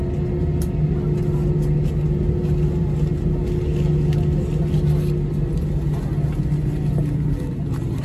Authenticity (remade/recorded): recorded